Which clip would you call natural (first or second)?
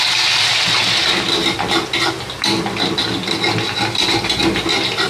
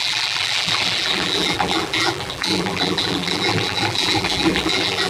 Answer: first